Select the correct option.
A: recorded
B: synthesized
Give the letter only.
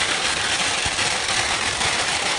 B